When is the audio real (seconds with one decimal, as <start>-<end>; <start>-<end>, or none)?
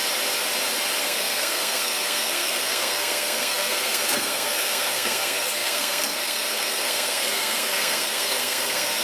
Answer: 0.0-1.0